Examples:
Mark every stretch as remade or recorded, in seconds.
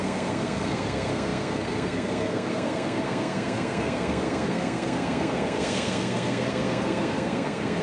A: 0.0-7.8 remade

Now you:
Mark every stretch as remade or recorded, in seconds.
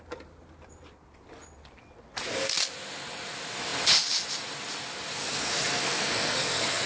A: 0.0-5.2 recorded; 5.2-6.9 remade